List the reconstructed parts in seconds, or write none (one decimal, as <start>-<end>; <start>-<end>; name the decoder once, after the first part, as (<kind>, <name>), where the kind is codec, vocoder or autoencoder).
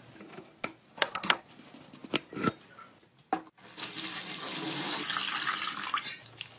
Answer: 0.9-1.5 (codec, SNAC)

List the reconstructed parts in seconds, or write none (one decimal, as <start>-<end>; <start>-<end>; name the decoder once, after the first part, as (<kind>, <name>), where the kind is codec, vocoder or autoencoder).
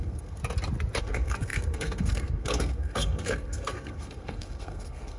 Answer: 0.0-0.4 (codec, SNAC); 1.0-5.2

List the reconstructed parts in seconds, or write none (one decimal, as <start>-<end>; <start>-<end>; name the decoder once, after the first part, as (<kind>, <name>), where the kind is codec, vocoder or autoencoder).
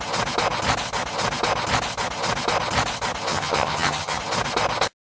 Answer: 3.3-4.2 (vocoder, HiFi-GAN)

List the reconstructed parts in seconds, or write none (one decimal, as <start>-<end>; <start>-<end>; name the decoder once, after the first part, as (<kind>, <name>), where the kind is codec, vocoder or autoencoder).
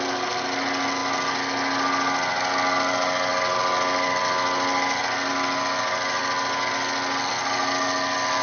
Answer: none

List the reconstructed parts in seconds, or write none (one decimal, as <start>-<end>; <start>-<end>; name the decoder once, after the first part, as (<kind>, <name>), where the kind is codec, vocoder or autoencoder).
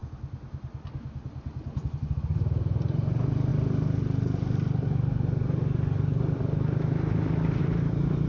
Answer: none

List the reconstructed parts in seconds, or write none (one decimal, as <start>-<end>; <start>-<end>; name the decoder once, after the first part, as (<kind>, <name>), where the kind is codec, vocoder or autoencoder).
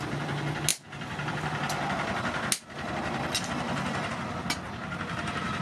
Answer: none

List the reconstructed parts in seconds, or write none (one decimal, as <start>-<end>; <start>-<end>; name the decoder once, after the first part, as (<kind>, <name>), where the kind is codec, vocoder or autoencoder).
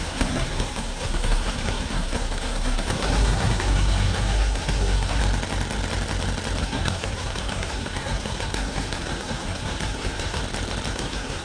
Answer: 0.0-5.2 (codec, SNAC); 6.6-10.4; 10.9-11.4